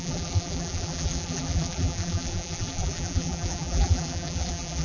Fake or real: fake